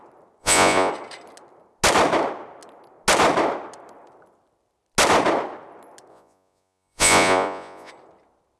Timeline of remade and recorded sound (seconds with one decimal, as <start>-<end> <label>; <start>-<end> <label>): 0.0-0.4 recorded; 0.4-0.9 remade; 0.9-6.1 recorded; 6.1-7.9 remade; 7.9-8.6 recorded

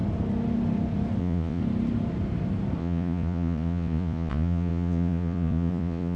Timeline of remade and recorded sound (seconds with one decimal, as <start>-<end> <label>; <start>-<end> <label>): 0.0-1.2 recorded; 1.2-1.6 remade; 1.6-2.8 recorded; 2.8-6.2 remade